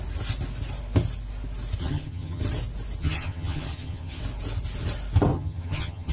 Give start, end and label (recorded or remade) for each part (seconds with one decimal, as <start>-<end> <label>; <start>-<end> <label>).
0.0-1.8 recorded; 1.8-2.4 remade; 2.4-3.0 recorded; 3.0-4.2 remade; 4.2-5.3 recorded; 5.3-6.1 remade